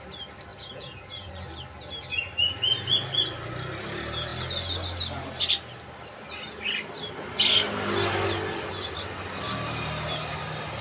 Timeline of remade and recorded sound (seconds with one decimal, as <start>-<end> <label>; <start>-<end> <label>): 0.0-0.5 recorded; 0.5-1.3 remade; 1.3-10.8 recorded